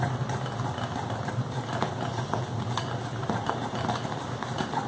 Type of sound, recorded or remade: recorded